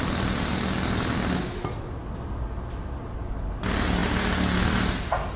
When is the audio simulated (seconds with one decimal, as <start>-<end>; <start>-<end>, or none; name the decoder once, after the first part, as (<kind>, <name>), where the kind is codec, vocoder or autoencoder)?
none